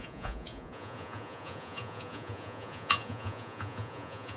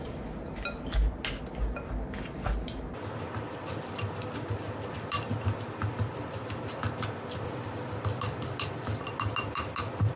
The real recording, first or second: second